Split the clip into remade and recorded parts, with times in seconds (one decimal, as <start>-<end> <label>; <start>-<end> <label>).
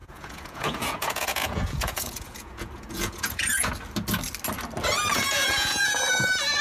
0.0-3.7 remade; 3.7-5.1 recorded; 5.1-5.9 remade; 5.9-6.6 recorded